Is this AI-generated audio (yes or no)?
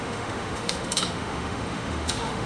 yes